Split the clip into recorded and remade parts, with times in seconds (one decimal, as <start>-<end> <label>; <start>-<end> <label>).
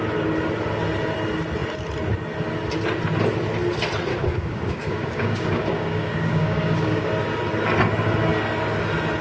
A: 0.0-4.1 recorded; 4.1-7.1 remade; 7.1-9.2 recorded